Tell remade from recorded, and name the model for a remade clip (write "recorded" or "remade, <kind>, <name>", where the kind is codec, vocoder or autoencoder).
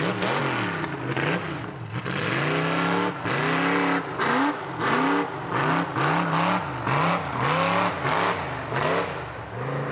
recorded